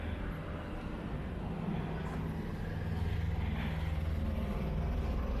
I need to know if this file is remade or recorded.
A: recorded